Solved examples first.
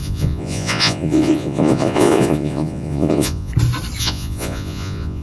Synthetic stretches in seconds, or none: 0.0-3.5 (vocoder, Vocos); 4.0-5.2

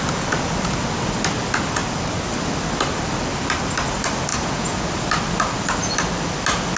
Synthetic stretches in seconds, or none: 4.3-4.9 (vocoder, Vocos)